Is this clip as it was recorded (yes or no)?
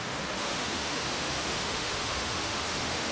no